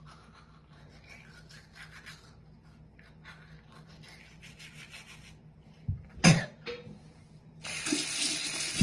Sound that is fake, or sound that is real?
real